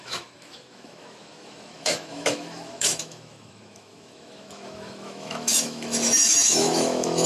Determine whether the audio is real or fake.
fake